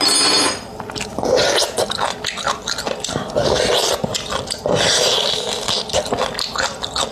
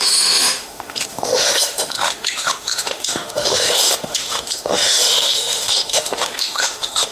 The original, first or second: first